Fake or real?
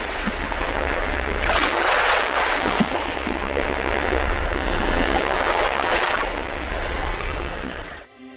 fake